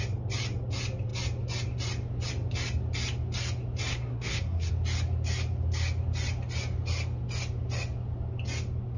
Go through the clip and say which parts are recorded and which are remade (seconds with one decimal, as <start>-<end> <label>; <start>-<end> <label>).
0.0-3.9 recorded; 3.9-4.7 remade; 4.7-9.0 recorded